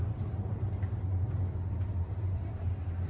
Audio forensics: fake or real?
real